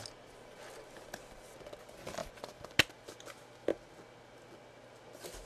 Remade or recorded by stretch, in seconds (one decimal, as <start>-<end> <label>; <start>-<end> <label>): 0.0-5.5 recorded